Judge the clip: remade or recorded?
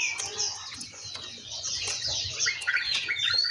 remade